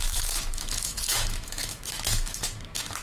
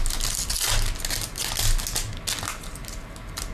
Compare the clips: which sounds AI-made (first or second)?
first